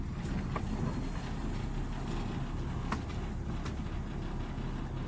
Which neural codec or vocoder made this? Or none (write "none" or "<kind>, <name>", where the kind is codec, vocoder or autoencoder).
none